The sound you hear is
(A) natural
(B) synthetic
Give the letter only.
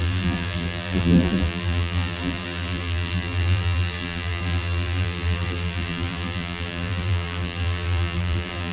B